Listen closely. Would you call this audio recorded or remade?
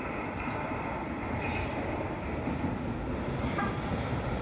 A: recorded